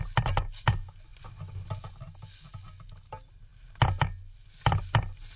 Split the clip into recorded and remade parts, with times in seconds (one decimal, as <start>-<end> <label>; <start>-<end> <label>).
0.0-5.4 recorded